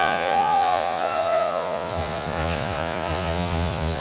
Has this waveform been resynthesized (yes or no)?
yes